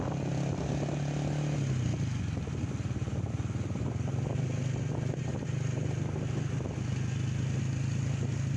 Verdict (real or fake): real